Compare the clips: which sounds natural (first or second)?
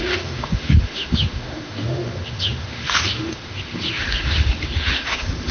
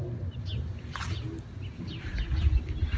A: second